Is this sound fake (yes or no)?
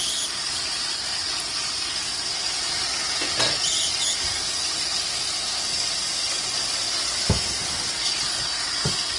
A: no